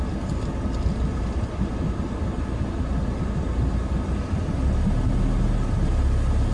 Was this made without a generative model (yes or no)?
yes